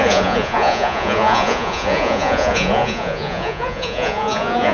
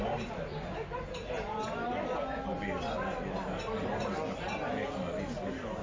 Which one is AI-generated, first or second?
first